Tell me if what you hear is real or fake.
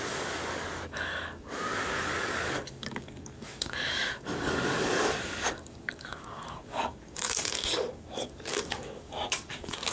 fake